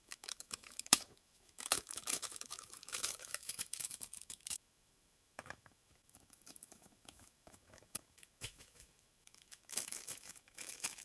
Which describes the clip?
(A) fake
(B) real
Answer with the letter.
A